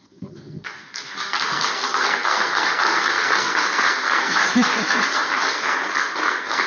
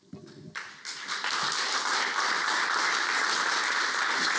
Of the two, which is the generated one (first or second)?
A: first